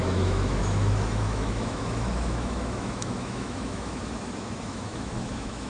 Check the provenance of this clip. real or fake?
fake